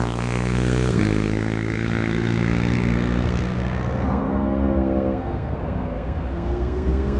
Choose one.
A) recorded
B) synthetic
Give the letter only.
B